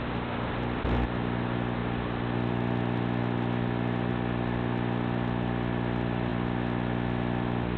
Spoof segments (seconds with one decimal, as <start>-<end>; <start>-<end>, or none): none